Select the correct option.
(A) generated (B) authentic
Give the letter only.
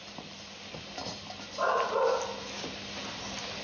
B